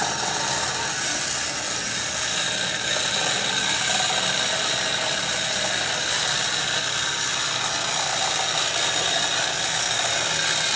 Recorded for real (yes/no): yes